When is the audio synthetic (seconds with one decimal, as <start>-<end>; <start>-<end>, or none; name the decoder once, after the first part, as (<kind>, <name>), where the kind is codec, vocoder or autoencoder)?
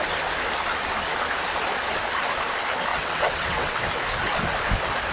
2.9-3.8 (vocoder, WaveNeXt)